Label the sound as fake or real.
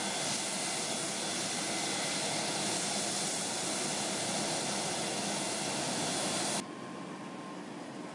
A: real